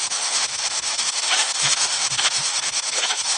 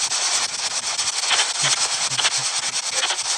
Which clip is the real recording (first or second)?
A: second